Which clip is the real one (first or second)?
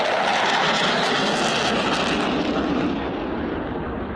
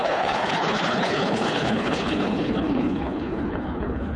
first